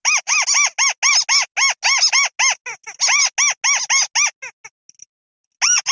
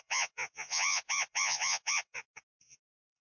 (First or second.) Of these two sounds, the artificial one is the second